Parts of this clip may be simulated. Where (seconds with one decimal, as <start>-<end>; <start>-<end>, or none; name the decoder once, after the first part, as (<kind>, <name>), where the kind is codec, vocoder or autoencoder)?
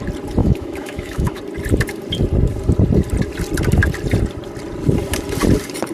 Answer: 0.4-1.4 (autoencoder, DAC-VAE)